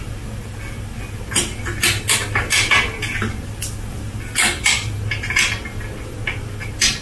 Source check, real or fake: real